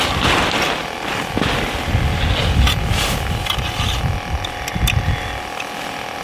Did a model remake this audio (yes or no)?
no